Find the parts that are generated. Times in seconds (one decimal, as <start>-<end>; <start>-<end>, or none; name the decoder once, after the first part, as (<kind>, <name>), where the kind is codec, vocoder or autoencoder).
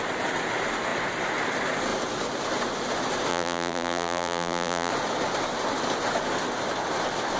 3.3-4.9 (vocoder, BigVGAN v2)